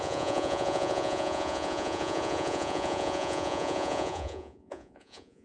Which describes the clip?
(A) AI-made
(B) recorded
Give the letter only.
A